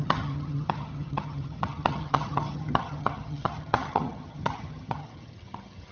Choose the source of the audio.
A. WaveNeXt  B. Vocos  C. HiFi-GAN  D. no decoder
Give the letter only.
C